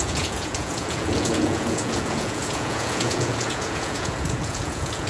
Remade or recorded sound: remade